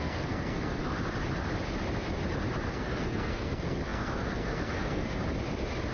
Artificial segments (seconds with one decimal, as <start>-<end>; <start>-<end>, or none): 0.0-0.8; 2.7-5.2